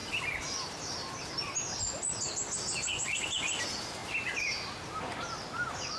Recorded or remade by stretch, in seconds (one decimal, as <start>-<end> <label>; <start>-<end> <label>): 0.0-6.0 recorded